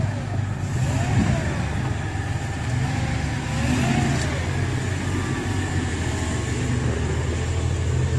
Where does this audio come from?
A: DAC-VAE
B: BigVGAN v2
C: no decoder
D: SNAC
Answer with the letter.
C